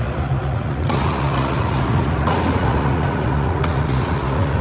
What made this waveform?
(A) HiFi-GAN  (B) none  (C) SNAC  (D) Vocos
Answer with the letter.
D